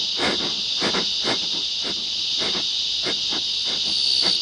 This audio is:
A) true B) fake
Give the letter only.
A